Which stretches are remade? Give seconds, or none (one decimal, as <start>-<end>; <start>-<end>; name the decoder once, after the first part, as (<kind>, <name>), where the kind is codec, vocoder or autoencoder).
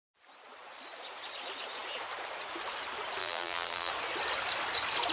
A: 3.2-3.9 (vocoder, BigVGAN v2)